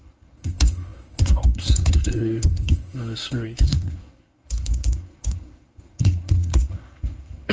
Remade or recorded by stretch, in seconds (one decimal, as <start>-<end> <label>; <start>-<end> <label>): 0.0-7.5 remade